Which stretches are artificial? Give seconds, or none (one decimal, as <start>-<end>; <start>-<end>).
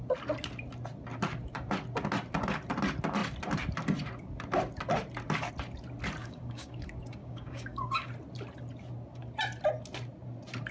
6.2-6.8; 7.2-8.1